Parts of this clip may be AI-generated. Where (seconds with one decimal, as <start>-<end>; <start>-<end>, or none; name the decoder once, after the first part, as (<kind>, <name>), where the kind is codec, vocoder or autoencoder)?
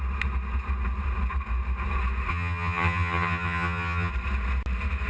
2.3-4.1 (vocoder, HiFi-GAN)